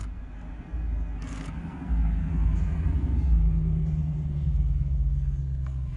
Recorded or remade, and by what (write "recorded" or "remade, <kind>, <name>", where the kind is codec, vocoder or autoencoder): remade, codec, SNAC